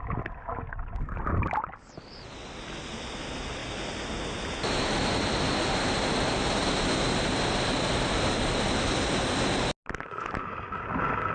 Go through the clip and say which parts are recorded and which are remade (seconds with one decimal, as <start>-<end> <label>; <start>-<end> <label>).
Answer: 0.0-11.3 recorded